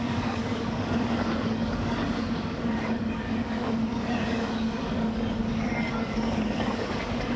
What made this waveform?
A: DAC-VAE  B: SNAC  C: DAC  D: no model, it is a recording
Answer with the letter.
C